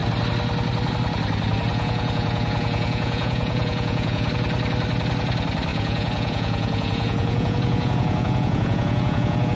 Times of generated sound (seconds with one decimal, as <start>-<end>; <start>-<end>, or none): 1.7-4.3; 5.7-9.6